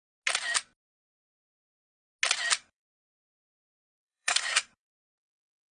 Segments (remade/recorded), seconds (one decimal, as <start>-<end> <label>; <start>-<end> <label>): 0.0-2.6 recorded; 2.6-5.0 remade; 5.0-5.7 recorded